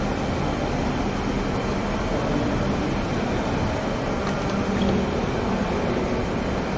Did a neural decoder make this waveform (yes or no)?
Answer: no